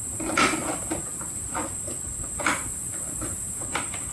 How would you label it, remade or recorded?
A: recorded